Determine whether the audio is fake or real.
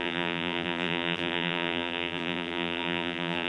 fake